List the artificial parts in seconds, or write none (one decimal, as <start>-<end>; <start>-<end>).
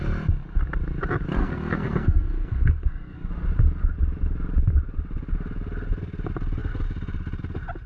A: 1.4-3.3